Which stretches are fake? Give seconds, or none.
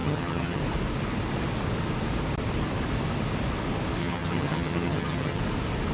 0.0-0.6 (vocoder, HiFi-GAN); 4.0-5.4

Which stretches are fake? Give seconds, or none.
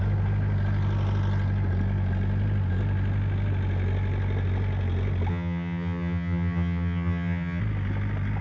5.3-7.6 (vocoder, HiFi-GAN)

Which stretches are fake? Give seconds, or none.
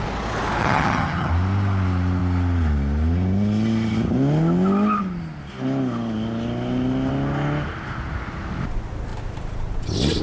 0.6-1.3 (vocoder, HiFi-GAN)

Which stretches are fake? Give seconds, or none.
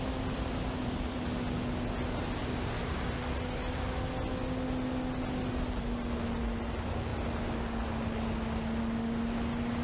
none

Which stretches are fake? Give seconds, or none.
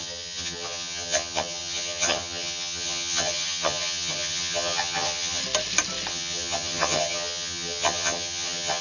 0.0-5.4 (vocoder, HiFi-GAN); 6.1-8.8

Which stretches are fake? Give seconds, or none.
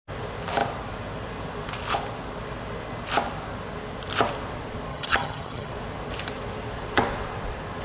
4.9-5.7 (vocoder, HiFi-GAN)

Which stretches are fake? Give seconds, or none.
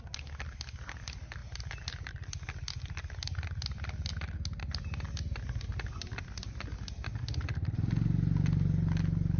none